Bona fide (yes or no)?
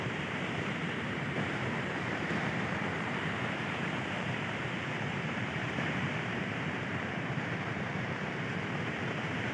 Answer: no